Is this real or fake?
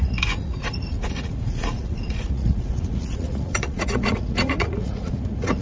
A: fake